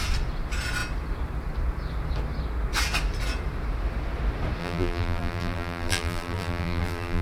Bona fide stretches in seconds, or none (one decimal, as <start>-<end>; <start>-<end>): 0.0-4.6